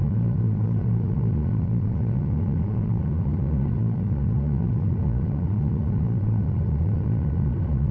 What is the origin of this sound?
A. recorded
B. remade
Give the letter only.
B